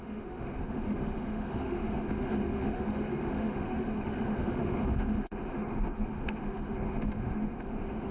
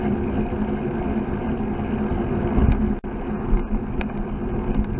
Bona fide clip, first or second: second